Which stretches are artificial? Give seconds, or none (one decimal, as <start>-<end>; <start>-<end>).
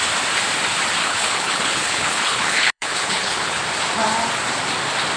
1.0-3.6